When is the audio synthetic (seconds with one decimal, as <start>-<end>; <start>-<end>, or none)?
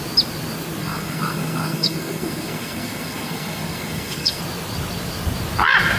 0.8-4.4